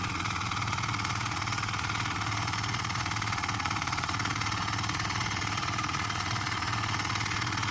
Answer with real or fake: fake